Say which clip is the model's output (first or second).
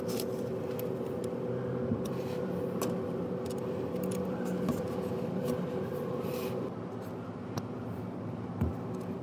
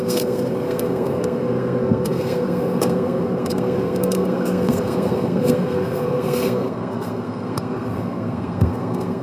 second